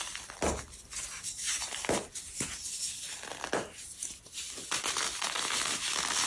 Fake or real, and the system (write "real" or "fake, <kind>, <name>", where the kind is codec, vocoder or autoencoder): real